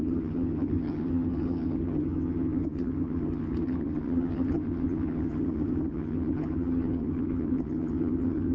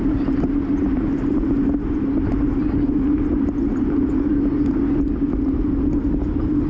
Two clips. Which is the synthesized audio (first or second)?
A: first